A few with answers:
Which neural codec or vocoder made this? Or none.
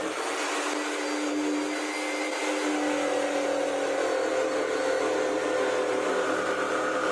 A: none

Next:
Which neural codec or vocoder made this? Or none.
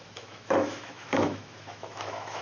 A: autoencoder, DAC-VAE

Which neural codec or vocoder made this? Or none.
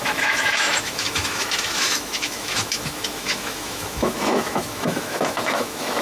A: autoencoder, DAC-VAE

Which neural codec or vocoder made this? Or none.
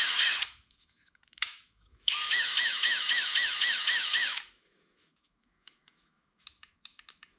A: autoencoder, DAC-VAE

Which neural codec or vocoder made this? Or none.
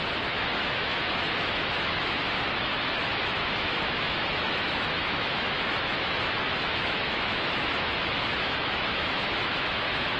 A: autoencoder, DAC-VAE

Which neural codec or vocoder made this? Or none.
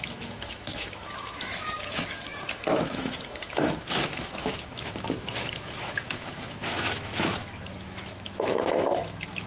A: autoencoder, DAC-VAE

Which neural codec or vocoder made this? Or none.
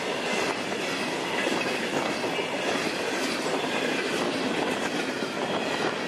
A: none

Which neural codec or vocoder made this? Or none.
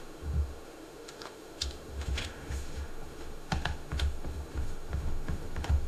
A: autoencoder, DAC-VAE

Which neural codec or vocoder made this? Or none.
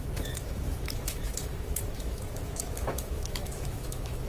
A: autoencoder, DAC-VAE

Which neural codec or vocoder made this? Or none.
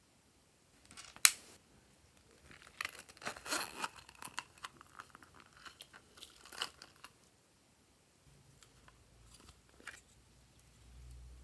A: none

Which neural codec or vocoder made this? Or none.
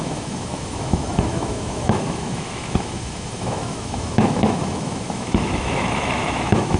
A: autoencoder, DAC-VAE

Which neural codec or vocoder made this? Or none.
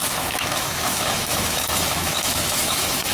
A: autoencoder, DAC-VAE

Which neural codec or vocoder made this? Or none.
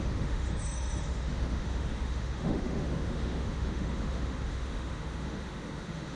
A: autoencoder, DAC-VAE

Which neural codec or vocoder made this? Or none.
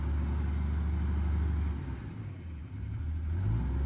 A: none